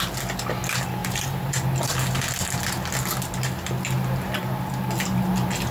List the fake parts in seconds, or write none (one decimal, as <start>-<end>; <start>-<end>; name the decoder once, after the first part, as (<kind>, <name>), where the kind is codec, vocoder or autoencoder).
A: 1.0-1.5 (vocoder, BigVGAN v2)